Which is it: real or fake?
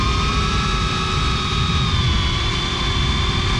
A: real